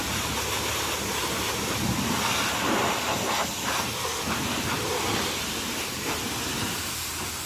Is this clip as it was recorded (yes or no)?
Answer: yes